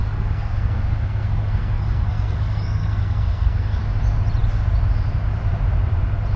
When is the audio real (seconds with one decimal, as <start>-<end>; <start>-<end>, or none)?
3.8-6.4